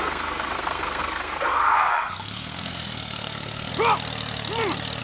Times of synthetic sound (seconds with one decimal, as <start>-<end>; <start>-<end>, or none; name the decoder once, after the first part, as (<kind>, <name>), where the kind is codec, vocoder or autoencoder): 0.0-3.7 (codec, SNAC)